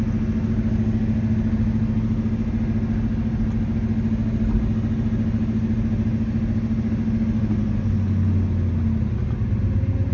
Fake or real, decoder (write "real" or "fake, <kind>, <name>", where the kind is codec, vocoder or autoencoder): real